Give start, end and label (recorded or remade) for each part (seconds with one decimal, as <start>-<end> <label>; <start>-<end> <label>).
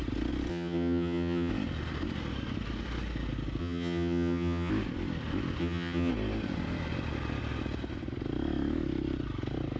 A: 0.0-0.5 recorded; 0.5-1.5 remade; 1.5-3.6 recorded; 3.6-4.7 remade; 4.7-5.6 recorded; 5.6-6.1 remade; 6.1-9.8 recorded